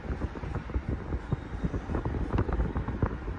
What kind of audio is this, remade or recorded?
recorded